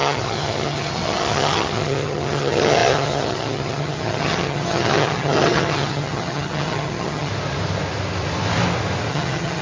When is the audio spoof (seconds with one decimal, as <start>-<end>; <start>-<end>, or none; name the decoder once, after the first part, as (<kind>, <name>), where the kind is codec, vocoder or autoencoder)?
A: 0.0-7.3 (vocoder, HiFi-GAN); 9.1-9.6